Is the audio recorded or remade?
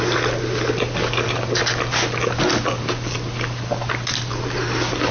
recorded